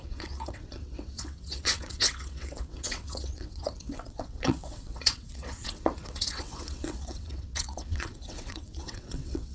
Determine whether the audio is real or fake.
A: fake